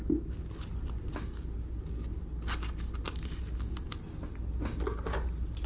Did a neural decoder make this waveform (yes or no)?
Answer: no